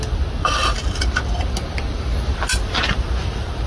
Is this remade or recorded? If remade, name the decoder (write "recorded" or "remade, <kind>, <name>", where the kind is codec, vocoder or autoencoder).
recorded